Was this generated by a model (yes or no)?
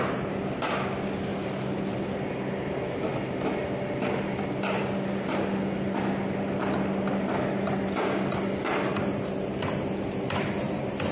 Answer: no